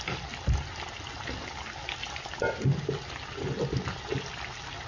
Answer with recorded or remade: recorded